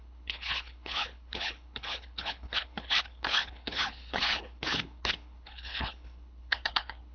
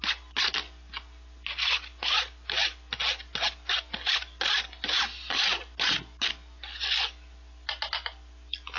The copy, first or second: first